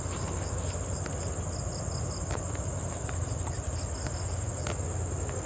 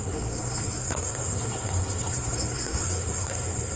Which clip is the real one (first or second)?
first